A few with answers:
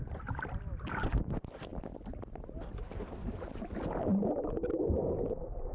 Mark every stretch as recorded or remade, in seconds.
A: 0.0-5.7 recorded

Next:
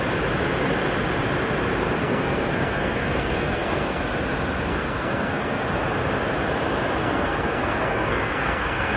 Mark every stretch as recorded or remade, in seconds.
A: 0.0-2.0 recorded; 2.0-4.0 remade; 4.0-4.7 recorded; 4.7-5.6 remade; 5.6-7.0 recorded; 7.0-9.0 remade

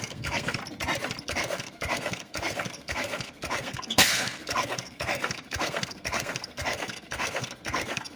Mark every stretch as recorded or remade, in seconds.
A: 0.0-0.6 remade; 0.6-1.2 recorded; 1.2-8.2 remade

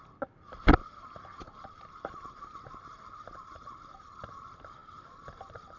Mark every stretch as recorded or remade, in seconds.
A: 0.0-5.8 recorded